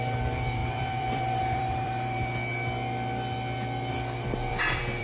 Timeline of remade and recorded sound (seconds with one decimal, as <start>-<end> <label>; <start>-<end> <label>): 0.0-2.3 remade; 2.3-3.9 recorded; 3.9-5.0 remade